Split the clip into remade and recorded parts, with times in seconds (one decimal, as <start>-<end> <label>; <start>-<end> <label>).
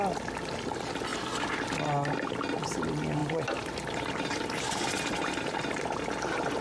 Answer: 0.0-1.1 recorded; 1.1-1.7 remade; 1.7-3.2 recorded; 3.2-5.8 remade; 5.8-6.6 recorded